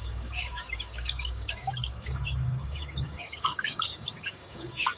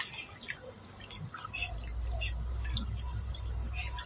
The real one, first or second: second